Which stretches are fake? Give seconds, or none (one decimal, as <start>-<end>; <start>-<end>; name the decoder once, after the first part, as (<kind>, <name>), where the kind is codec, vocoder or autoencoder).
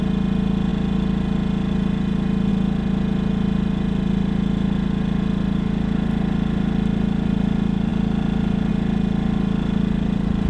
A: none